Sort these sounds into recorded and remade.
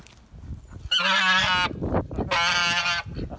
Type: recorded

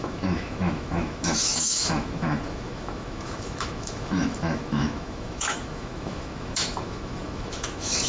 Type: remade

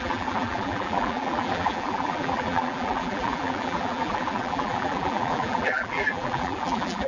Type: remade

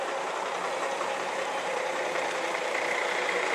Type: remade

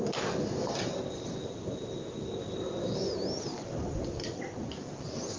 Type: recorded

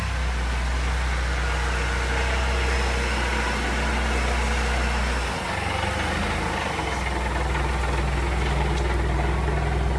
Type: recorded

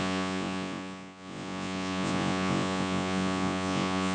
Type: remade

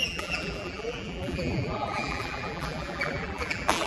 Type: remade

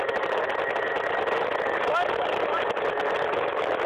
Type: recorded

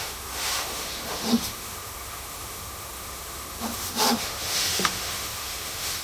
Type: remade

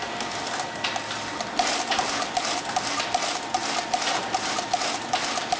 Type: recorded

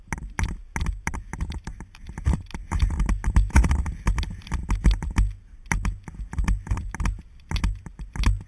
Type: recorded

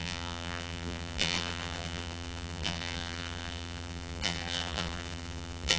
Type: remade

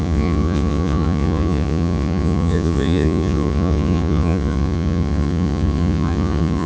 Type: remade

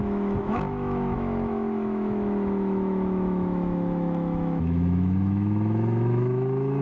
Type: remade